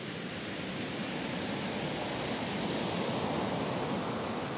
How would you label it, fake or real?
real